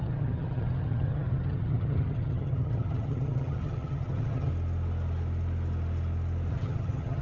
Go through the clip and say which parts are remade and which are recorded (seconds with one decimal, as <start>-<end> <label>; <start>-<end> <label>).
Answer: 0.0-4.5 remade; 4.5-6.5 recorded; 6.5-7.2 remade